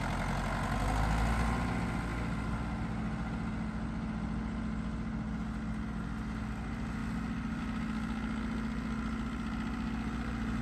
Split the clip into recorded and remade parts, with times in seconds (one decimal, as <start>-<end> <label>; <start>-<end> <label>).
0.0-7.0 recorded; 7.0-7.6 remade; 7.6-10.6 recorded